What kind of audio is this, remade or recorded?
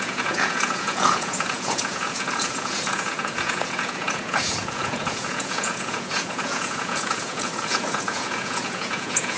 remade